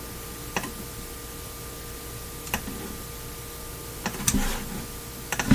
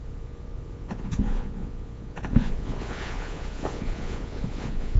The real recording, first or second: first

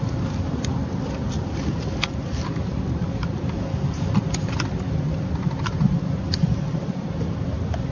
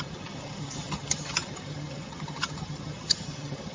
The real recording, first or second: first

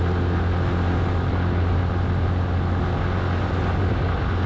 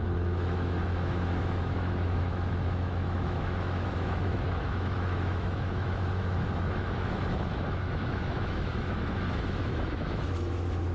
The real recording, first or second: first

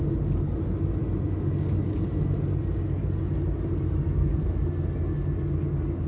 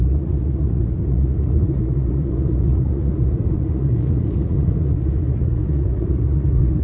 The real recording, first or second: first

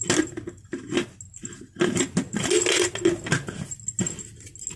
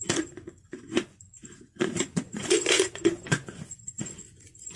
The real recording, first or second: first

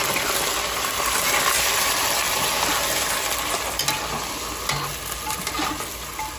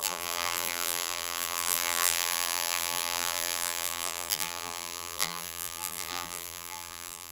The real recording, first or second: first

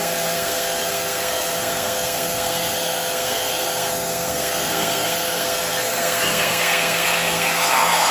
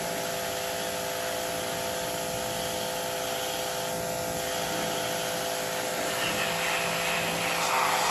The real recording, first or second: second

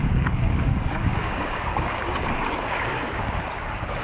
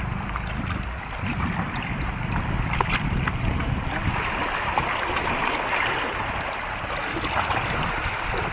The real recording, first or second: second